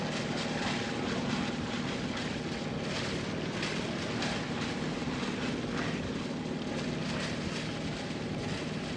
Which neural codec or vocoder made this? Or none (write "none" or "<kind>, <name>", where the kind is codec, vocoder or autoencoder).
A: none